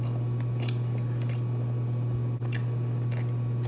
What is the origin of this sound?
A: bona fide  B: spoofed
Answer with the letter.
A